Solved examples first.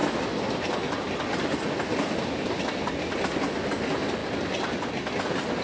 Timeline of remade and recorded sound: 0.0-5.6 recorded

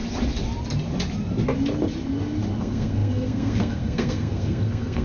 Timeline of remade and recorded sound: 0.0-2.6 recorded; 2.6-5.0 remade

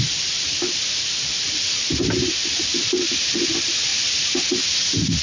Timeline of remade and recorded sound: 0.0-5.2 recorded

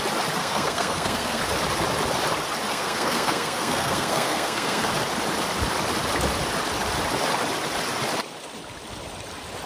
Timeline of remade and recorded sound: 0.0-0.4 recorded; 0.4-1.4 remade; 1.4-2.7 recorded; 2.7-4.9 remade; 4.9-9.7 recorded

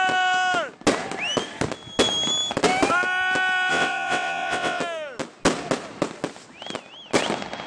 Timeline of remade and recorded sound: 0.0-3.7 recorded; 3.7-4.8 remade; 4.8-7.7 recorded

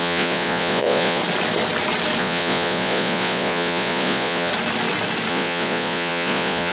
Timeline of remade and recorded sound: 0.0-1.2 remade; 1.2-2.2 recorded; 2.2-4.5 remade; 4.5-5.3 recorded; 5.3-6.7 remade